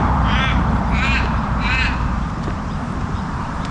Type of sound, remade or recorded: remade